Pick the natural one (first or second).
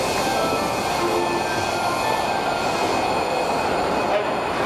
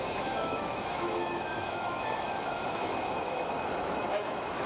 first